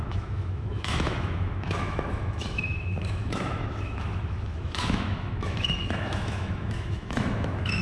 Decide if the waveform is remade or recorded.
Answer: remade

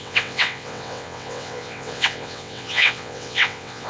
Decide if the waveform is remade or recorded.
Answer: remade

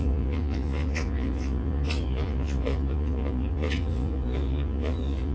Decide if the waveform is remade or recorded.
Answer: remade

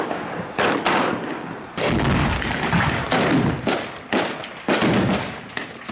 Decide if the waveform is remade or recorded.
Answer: recorded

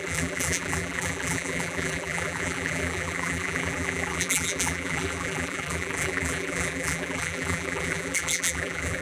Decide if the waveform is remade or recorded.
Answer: remade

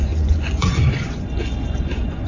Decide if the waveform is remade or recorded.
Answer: remade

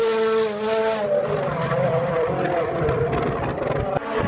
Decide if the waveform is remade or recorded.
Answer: recorded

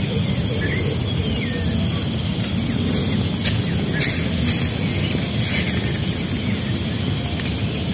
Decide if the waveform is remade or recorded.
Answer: recorded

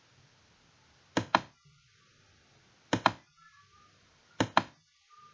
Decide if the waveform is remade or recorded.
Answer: recorded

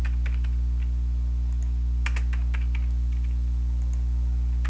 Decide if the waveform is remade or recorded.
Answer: recorded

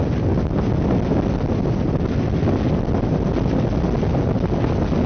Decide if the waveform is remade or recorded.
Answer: recorded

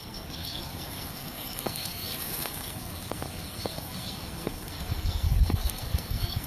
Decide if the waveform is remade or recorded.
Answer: remade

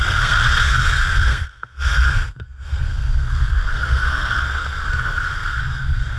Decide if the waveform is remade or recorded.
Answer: remade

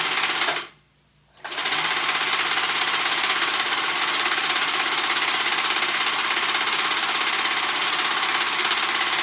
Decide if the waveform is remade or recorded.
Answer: recorded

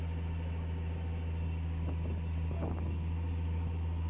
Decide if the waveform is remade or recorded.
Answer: recorded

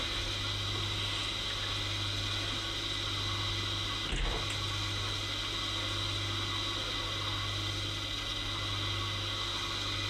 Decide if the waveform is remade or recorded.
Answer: recorded